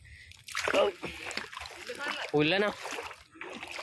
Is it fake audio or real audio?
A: real